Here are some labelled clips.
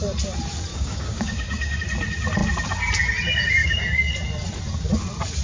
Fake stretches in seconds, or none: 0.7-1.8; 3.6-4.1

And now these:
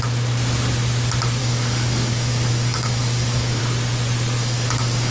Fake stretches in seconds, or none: 1.4-3.6; 4.4-5.1

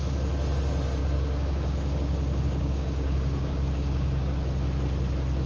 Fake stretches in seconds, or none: 1.0-4.3